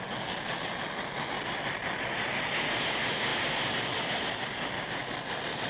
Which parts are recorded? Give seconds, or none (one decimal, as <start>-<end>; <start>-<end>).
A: 0.0-5.7